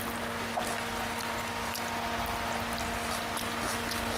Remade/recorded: recorded